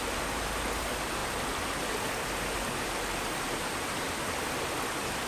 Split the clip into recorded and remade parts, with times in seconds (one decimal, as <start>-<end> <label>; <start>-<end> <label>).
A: 0.0-5.3 recorded